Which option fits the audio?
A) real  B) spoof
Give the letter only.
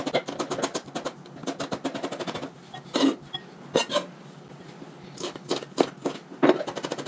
A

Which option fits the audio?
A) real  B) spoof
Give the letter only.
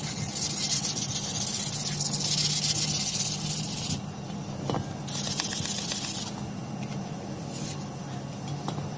A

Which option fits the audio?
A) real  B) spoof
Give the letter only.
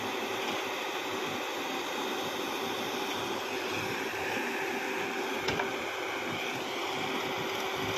A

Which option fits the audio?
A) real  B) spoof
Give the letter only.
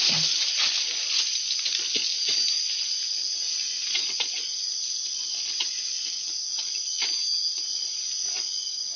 A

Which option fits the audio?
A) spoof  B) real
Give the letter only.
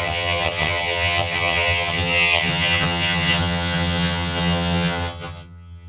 A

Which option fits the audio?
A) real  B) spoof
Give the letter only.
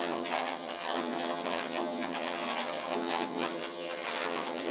B